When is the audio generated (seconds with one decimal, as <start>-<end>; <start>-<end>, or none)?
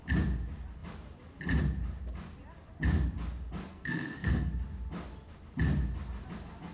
3.7-4.5